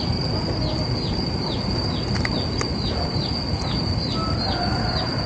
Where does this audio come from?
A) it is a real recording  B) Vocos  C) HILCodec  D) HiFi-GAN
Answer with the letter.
A